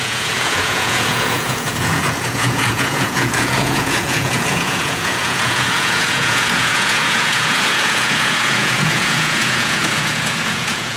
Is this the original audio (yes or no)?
no